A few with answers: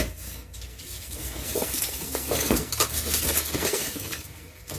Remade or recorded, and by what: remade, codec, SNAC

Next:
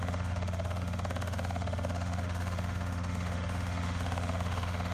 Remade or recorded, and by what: remade, autoencoder, DAC-VAE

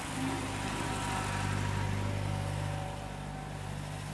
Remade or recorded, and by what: recorded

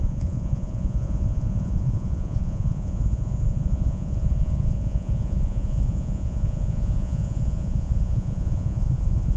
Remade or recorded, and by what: remade, vocoder, Vocos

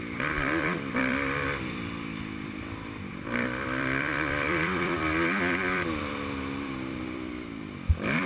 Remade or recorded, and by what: remade, vocoder, BigVGAN v2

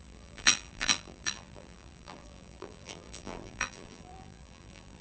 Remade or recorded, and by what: remade, vocoder, BigVGAN v2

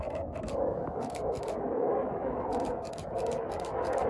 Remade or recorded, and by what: remade, codec, DAC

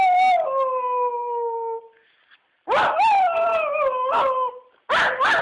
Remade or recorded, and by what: recorded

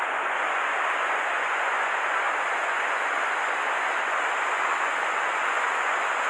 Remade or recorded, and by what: remade, vocoder, Vocos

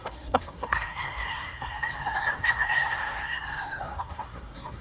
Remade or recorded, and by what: remade, codec, SNAC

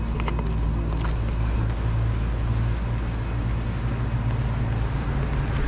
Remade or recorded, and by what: recorded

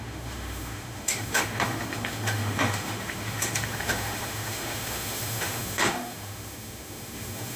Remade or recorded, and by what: remade, autoencoder, DAC-VAE